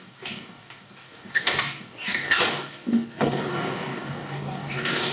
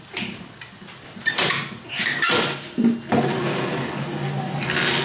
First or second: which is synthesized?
first